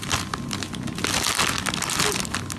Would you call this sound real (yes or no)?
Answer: yes